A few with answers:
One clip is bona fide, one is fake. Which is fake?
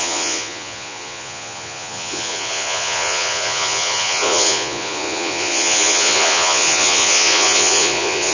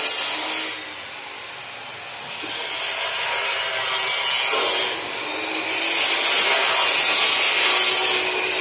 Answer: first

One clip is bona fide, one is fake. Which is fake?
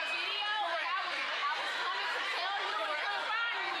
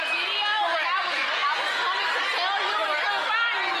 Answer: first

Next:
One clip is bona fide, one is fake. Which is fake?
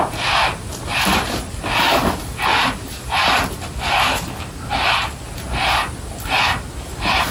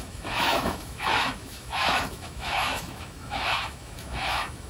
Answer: second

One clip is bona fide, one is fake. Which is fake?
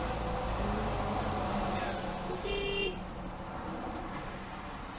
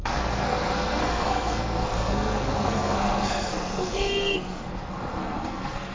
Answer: second